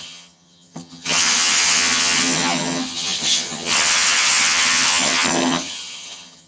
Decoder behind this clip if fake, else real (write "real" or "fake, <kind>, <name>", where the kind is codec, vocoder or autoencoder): fake, vocoder, HiFi-GAN